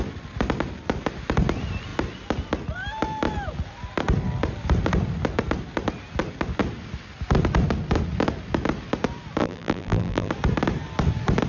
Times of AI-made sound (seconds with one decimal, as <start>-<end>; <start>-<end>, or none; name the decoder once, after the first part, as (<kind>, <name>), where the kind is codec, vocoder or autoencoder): 9.4-10.3 (vocoder, BigVGAN v2)

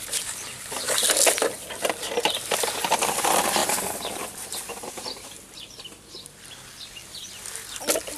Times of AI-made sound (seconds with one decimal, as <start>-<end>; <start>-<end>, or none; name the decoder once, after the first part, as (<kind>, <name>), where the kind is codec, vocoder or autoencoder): 3.6-6.1 (vocoder, BigVGAN v2)

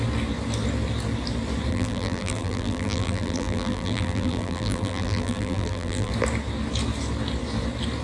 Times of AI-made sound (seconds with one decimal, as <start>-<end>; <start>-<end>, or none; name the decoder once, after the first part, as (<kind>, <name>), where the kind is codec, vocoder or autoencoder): 1.7-6.1 (vocoder, BigVGAN v2)

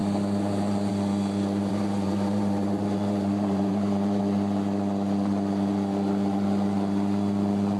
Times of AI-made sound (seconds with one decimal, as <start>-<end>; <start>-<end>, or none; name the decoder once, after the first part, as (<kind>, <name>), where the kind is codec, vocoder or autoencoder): 1.7-4.2 (vocoder, BigVGAN v2)